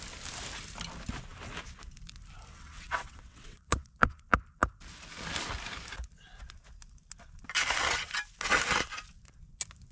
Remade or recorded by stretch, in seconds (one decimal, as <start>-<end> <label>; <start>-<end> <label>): 0.0-2.5 recorded; 2.5-4.2 remade; 4.2-9.9 recorded